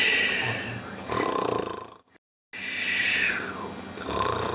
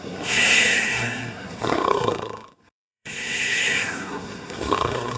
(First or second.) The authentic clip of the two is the first